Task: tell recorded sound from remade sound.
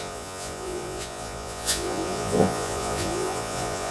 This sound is remade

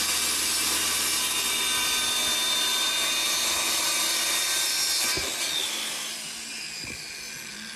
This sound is recorded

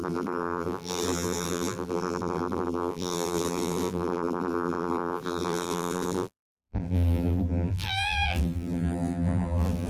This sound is remade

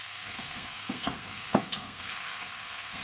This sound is remade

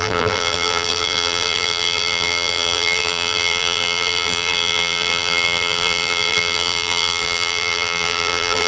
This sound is remade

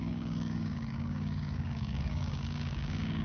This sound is remade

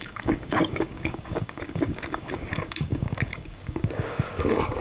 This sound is remade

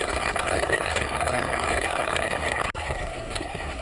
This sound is remade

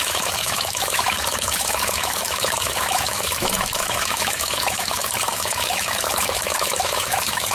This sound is remade